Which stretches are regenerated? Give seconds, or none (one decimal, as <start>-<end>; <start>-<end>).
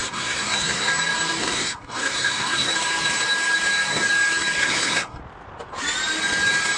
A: 0.0-0.9; 1.4-2.7; 4.6-5.2